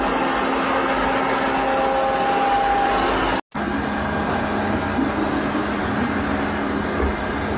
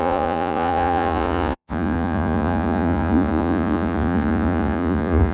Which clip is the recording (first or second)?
first